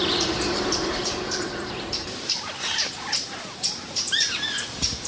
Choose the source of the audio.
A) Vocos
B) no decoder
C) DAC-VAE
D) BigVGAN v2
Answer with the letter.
D